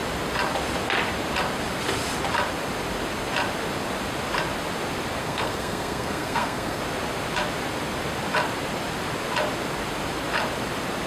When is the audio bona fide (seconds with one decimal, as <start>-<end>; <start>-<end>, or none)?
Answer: 0.0-5.2; 6.8-11.1